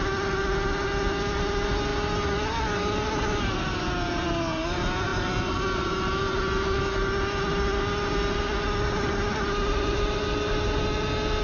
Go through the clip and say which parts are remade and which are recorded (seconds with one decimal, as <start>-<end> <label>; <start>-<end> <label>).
0.0-11.4 recorded